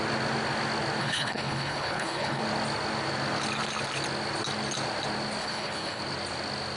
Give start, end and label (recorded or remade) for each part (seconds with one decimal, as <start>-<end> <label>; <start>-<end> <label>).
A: 0.0-1.0 recorded; 1.0-2.4 remade; 2.4-5.4 recorded; 5.4-6.0 remade; 6.0-6.8 recorded